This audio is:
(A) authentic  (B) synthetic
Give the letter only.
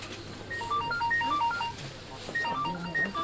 A